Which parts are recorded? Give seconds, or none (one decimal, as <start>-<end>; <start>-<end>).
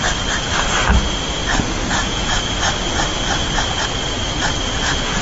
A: 0.0-5.2